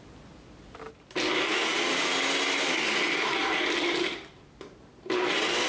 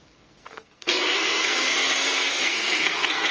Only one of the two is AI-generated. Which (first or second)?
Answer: second